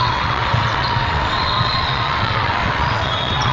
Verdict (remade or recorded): remade